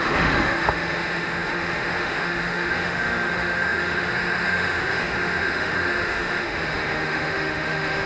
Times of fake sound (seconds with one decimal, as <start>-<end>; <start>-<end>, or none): 0.0-8.1